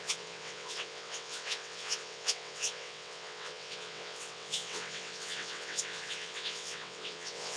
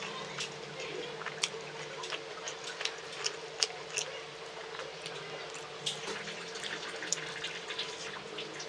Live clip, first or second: second